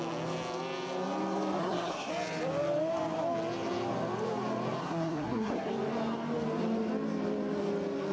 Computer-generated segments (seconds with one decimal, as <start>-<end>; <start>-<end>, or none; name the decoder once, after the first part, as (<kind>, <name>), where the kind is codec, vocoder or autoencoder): 1.6-2.1 (codec, SNAC); 4.8-5.7

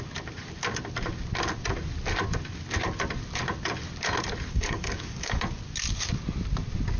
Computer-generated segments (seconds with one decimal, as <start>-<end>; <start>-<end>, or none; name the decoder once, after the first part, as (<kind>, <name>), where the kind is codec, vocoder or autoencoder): 4.5-5.4 (codec, DAC)